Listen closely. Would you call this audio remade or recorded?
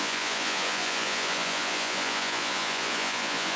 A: remade